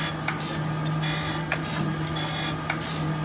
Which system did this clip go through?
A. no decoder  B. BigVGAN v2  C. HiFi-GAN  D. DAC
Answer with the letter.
A